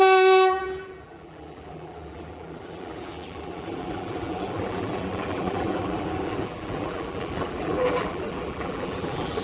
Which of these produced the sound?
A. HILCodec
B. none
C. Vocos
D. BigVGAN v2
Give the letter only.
D